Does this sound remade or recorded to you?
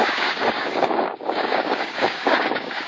remade